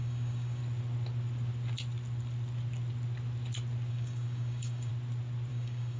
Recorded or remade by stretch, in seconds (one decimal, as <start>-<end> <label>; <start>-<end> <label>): 0.0-0.6 remade; 0.6-3.9 recorded; 3.9-4.9 remade; 4.9-5.5 recorded; 5.5-6.0 remade